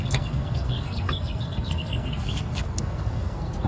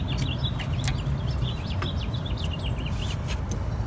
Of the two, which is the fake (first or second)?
first